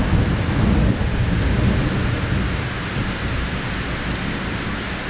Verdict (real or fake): real